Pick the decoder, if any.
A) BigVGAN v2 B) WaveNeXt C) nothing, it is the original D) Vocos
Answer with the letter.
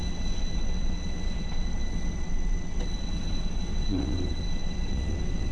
B